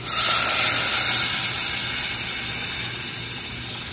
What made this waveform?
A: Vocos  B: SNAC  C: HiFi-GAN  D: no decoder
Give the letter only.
D